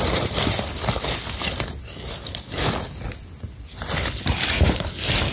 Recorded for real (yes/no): yes